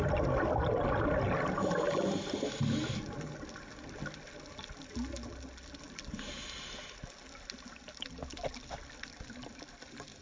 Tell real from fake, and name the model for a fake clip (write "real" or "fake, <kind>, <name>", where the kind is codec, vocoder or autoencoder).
real